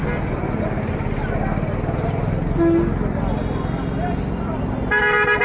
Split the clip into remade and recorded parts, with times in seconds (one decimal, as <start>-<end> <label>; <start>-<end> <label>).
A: 0.0-5.4 recorded